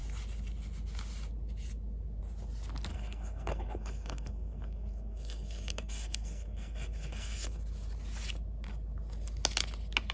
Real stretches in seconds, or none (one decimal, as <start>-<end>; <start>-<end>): 0.0-2.9; 7.6-10.1